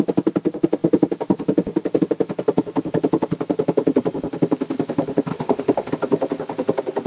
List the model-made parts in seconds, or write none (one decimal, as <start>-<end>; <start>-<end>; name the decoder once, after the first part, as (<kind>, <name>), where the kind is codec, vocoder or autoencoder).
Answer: 5.3-5.9 (autoencoder, DAC-VAE)